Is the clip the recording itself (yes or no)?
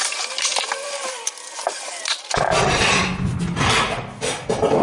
no